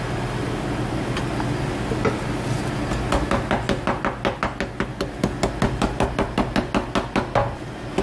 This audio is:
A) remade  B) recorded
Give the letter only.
B